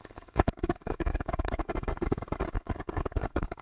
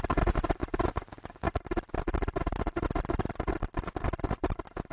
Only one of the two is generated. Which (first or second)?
first